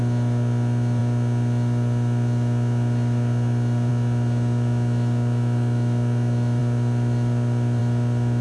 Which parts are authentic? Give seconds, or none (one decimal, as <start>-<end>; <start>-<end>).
0.0-8.4